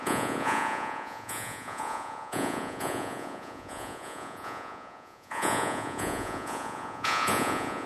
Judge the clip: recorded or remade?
remade